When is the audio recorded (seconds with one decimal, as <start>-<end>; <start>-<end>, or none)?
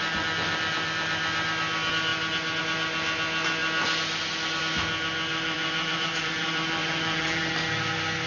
0.0-5.3; 7.4-8.3